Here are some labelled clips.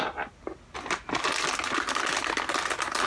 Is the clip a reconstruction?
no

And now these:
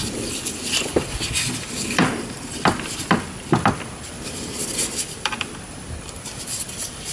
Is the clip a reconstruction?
yes